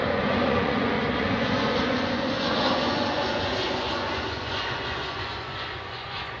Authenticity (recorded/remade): remade